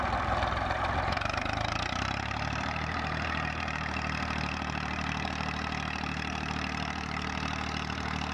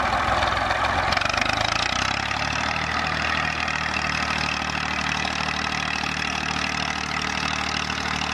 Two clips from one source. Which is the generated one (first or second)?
first